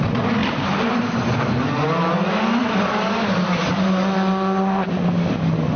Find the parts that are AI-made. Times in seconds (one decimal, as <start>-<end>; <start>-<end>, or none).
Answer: none